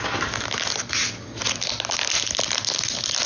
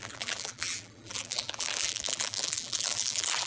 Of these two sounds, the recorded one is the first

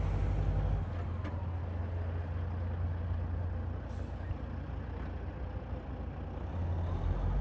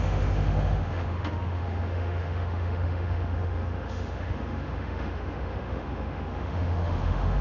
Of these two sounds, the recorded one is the first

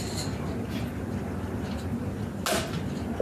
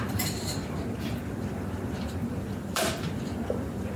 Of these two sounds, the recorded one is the first